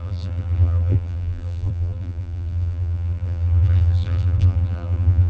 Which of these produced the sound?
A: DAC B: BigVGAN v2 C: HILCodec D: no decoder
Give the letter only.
B